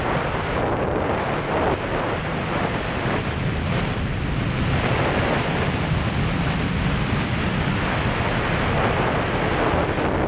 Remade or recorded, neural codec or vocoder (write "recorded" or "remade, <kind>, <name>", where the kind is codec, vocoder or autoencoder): recorded